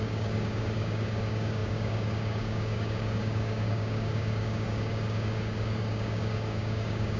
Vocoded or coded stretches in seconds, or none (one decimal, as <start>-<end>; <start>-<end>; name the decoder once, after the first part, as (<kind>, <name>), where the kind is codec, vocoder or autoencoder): 0.0-7.2 (codec, DAC)